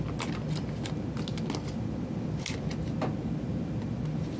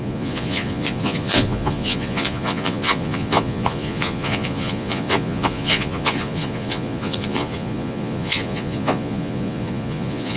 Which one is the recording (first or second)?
first